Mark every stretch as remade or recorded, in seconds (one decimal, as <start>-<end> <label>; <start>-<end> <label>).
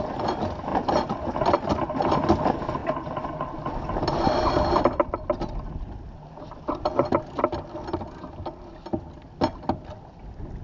0.0-10.6 recorded